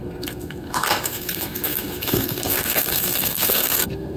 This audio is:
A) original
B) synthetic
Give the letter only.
B